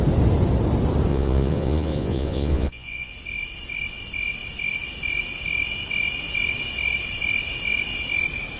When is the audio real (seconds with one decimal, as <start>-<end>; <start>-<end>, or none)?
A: 0.0-1.1; 3.1-8.6